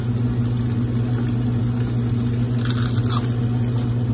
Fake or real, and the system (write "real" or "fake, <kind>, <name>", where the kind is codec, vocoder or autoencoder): real